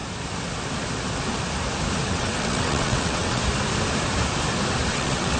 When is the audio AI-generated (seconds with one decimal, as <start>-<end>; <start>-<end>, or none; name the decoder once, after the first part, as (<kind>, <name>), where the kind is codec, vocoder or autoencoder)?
2.1-3.4 (vocoder, WaveNeXt); 4.9-5.4